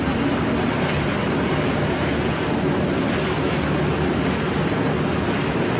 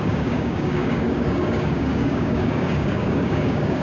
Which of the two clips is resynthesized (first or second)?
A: second